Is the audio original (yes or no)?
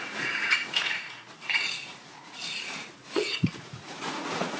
no